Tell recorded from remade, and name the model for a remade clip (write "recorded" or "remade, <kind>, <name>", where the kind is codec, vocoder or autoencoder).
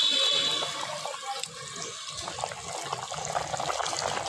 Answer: recorded